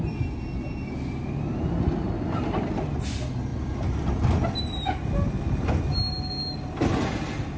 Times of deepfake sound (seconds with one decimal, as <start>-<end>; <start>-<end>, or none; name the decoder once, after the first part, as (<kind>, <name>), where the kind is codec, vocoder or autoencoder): none